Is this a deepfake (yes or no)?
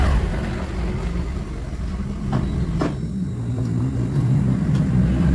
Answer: no